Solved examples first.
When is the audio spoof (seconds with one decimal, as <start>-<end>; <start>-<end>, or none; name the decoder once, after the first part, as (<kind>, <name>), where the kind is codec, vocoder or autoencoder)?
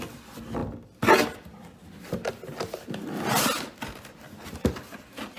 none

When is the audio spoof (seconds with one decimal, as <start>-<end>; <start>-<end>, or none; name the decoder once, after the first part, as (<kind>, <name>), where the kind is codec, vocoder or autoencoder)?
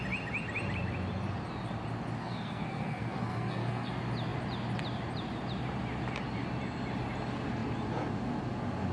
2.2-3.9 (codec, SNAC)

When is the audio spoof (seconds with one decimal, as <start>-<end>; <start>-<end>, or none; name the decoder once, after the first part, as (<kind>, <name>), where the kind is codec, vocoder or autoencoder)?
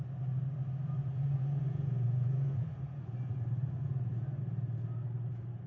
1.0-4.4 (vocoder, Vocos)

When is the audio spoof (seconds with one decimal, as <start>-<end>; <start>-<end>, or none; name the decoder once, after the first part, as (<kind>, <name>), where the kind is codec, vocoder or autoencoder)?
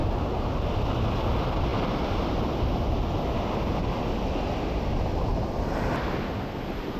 0.0-0.7 (vocoder, BigVGAN v2)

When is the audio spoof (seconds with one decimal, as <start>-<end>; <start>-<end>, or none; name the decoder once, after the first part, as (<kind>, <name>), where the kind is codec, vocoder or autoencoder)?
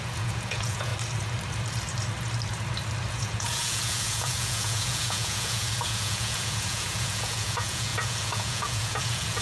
0.0-0.9 (vocoder, Vocos); 3.1-9.4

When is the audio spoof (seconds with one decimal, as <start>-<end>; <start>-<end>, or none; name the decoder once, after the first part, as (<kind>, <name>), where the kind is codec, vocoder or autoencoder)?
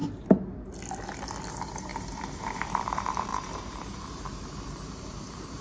1.5-5.6 (vocoder, BigVGAN v2)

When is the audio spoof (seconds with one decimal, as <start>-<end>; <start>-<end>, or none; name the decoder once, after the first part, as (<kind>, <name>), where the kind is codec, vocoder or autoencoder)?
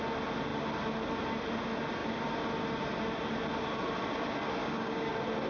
4.6-5.1 (codec, DAC)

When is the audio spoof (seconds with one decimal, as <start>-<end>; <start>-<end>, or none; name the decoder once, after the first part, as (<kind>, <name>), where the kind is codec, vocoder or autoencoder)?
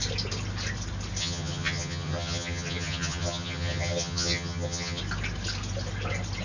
1.2-5.0 (vocoder, HiFi-GAN)